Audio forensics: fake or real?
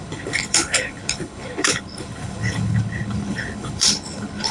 fake